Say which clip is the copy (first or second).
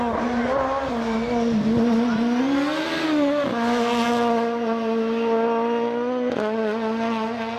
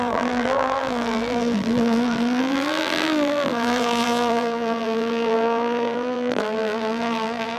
second